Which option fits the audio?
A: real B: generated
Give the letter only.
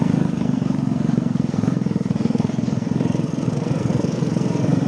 B